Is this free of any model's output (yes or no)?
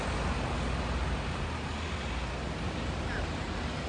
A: yes